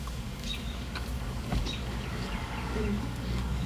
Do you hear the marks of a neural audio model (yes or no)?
yes